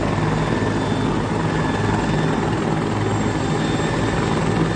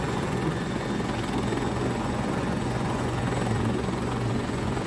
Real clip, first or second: first